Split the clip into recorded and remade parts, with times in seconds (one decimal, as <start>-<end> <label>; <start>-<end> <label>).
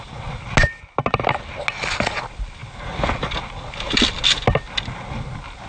0.0-5.7 recorded